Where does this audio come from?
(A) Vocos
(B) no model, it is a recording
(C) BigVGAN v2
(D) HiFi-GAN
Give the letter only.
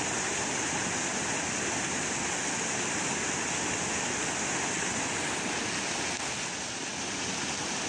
B